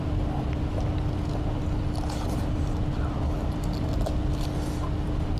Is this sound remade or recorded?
recorded